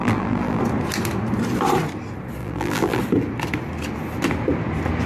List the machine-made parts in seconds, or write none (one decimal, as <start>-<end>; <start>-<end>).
0.0-0.6; 2.4-3.0